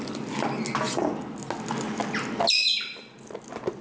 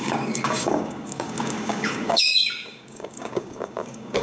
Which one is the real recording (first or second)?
first